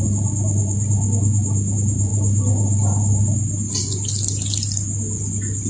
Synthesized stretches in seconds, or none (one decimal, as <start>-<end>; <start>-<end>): none